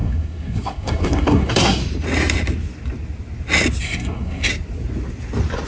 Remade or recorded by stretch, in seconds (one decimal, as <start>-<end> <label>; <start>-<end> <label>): 0.0-1.8 remade; 1.8-3.8 recorded; 3.8-4.5 remade; 4.5-5.7 recorded